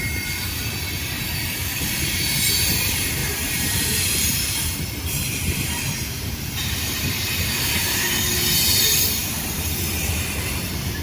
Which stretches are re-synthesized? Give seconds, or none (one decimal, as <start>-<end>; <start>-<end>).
0.0-11.0